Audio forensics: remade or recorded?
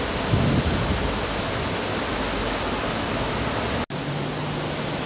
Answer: recorded